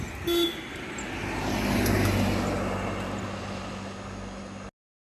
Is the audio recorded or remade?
recorded